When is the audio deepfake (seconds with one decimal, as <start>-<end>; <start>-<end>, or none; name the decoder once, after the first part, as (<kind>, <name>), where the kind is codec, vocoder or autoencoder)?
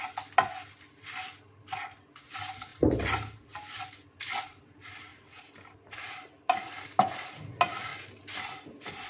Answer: none